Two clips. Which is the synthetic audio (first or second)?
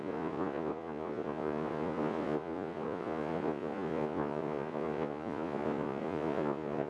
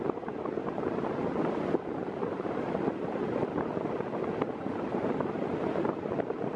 first